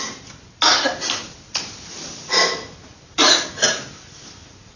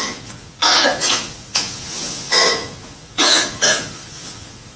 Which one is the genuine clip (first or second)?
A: first